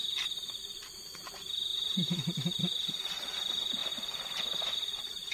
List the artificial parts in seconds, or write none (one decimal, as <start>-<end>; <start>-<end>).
none